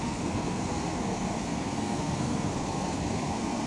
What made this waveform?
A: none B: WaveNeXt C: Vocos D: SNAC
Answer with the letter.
D